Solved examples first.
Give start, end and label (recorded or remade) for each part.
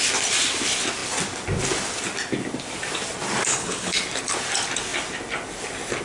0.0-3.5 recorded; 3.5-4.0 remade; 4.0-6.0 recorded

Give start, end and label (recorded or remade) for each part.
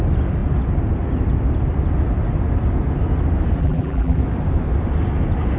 0.0-3.6 recorded; 3.6-4.2 remade; 4.2-5.6 recorded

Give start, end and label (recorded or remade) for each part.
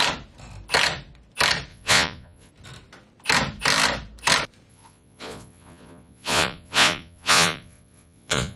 0.0-1.7 recorded; 1.7-2.5 remade; 2.5-4.7 recorded; 4.7-8.6 remade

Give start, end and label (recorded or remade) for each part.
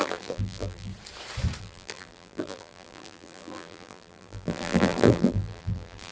0.0-0.9 remade; 0.9-1.6 recorded; 1.6-6.1 remade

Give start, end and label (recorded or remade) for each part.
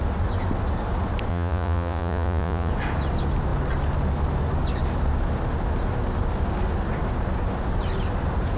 0.0-1.3 recorded; 1.3-2.7 remade; 2.7-8.6 recorded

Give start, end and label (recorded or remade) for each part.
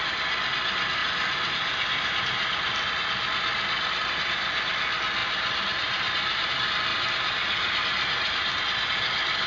0.0-1.0 recorded; 1.0-2.9 remade; 2.9-5.2 recorded; 5.2-6.5 remade; 6.5-6.9 recorded; 6.9-8.6 remade; 8.6-9.5 recorded